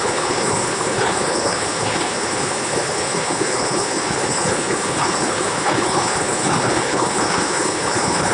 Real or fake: fake